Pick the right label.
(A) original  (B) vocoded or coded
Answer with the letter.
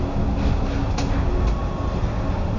A